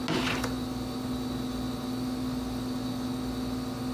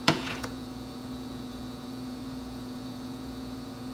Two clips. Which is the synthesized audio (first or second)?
second